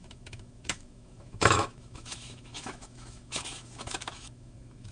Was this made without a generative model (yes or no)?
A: no